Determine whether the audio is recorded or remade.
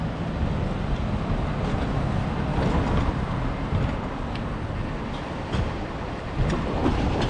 recorded